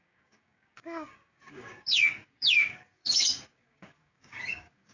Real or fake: fake